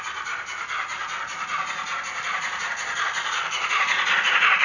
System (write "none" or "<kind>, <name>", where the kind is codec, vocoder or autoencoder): none